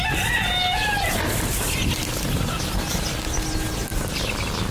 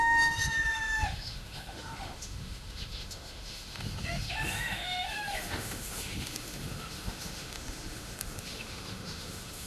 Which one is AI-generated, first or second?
second